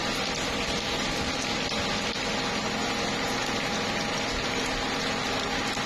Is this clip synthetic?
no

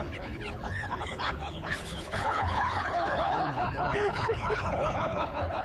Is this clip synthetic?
yes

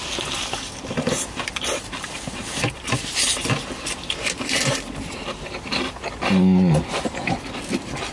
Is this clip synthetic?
no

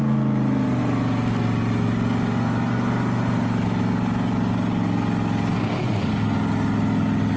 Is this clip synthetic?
no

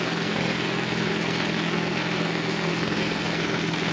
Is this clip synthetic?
yes